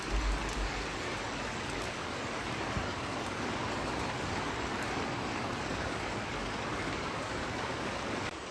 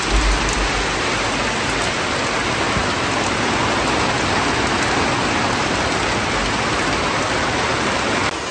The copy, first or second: first